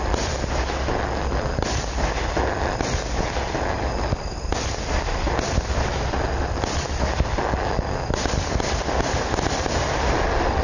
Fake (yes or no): no